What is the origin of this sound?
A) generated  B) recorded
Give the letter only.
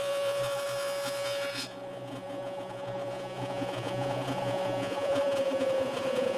A